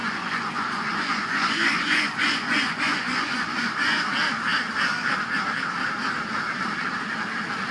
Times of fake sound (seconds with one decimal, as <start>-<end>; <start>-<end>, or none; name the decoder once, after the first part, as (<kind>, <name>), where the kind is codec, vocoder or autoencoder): 0.0-4.1 (vocoder, Vocos)